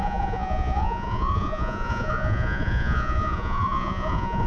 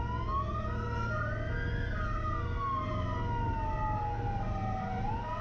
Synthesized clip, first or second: first